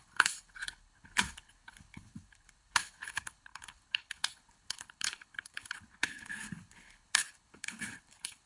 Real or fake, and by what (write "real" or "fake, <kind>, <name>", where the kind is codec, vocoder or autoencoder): fake, codec, HILCodec